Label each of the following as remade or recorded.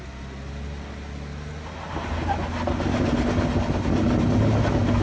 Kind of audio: recorded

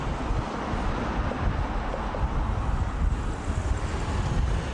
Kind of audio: recorded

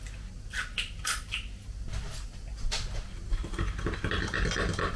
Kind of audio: recorded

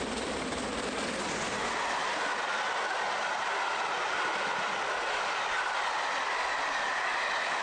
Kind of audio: recorded